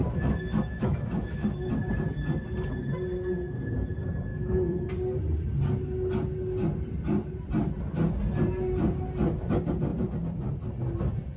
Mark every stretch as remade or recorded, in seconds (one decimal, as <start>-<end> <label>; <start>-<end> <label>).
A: 0.0-1.7 remade; 1.7-4.3 recorded; 4.3-4.9 remade; 4.9-11.4 recorded